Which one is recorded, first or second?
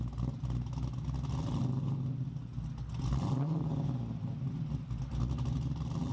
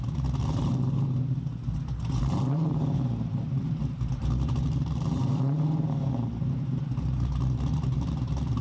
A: first